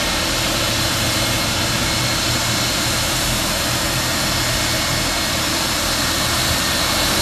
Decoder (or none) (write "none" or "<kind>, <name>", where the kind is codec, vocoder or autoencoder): vocoder, BigVGAN v2